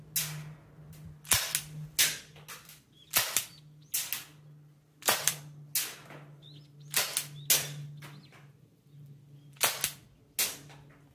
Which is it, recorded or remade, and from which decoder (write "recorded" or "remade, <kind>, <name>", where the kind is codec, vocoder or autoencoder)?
recorded